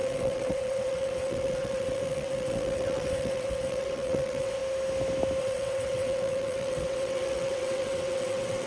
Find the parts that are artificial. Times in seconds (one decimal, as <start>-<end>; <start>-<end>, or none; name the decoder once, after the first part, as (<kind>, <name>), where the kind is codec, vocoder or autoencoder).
0.0-4.6 (vocoder, WaveNeXt); 5.4-8.7